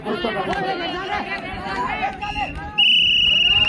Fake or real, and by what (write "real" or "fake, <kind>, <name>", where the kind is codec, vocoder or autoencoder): real